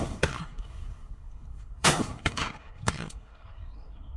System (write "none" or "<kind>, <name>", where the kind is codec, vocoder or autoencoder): codec, SNAC